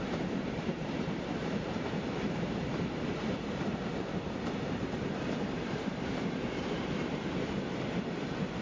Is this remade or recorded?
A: remade